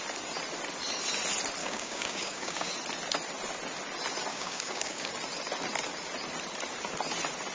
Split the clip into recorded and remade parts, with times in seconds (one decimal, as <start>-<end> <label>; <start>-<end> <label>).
0.0-1.6 recorded; 1.6-2.7 remade; 2.7-4.3 recorded; 4.3-5.1 remade; 5.1-7.5 recorded